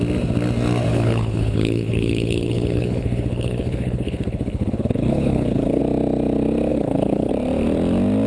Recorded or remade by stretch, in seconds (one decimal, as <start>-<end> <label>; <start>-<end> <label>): 0.0-0.9 recorded; 0.9-5.8 remade; 5.8-6.7 recorded; 6.7-7.3 remade; 7.3-8.3 recorded